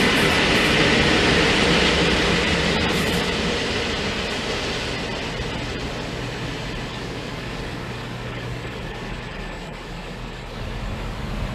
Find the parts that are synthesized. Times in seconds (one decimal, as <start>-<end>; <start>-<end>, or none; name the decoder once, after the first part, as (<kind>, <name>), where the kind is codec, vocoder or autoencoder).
6.9-11.5 (codec, DAC)